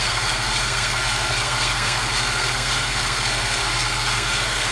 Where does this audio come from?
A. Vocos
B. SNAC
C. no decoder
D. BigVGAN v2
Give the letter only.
B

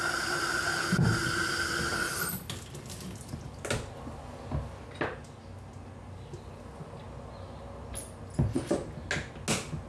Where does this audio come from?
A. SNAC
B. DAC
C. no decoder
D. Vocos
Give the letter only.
C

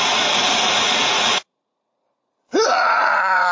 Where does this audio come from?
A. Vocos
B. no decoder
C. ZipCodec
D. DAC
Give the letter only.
A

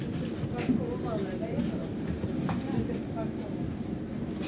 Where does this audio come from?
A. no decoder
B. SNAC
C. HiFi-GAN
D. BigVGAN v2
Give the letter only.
A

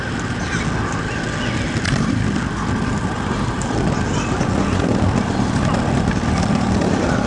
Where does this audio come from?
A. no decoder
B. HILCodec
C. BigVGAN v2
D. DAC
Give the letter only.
A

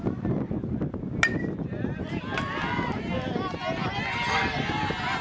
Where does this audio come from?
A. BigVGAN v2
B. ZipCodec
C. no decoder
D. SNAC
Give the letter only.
C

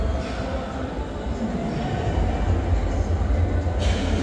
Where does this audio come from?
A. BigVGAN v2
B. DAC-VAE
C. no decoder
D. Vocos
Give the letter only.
C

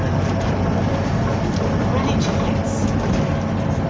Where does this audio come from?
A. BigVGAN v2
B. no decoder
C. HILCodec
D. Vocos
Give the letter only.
B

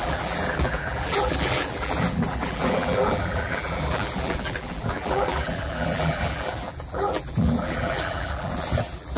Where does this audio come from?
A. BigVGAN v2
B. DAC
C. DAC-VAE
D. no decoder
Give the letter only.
A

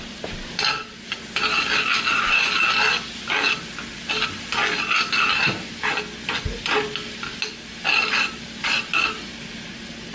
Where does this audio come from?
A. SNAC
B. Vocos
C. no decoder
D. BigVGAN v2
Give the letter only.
C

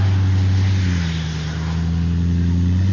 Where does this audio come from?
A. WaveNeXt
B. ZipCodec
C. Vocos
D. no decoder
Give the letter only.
D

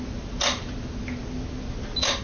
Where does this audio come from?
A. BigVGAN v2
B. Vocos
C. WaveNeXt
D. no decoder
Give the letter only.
D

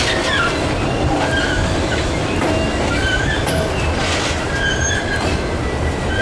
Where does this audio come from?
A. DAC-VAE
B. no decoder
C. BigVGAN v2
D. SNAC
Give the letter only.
B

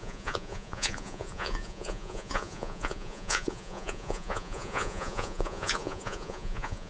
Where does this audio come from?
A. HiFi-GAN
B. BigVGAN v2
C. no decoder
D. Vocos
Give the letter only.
D